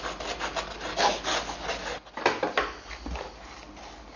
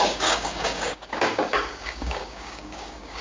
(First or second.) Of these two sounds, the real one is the first